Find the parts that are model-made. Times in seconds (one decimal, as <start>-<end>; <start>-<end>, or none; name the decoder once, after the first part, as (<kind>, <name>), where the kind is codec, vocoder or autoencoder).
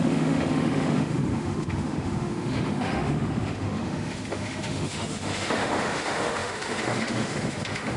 0.0-8.0 (autoencoder, DAC-VAE)